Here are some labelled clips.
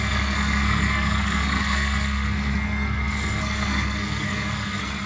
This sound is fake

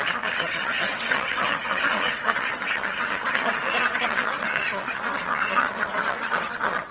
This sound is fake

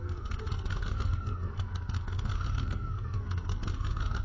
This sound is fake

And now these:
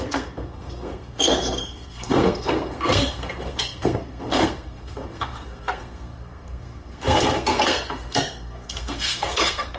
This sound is fake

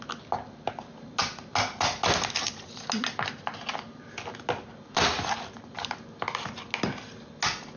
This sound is real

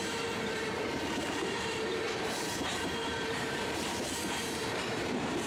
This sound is fake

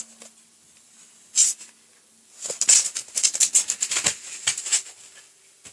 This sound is real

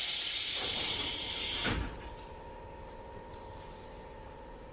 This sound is fake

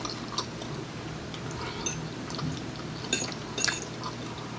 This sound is real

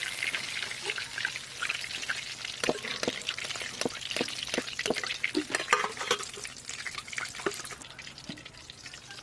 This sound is real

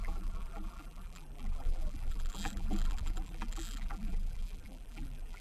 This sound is fake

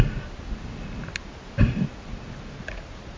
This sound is real